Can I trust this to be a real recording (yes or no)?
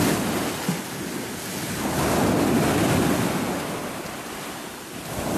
yes